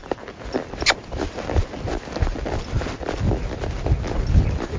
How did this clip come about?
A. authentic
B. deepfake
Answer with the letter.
A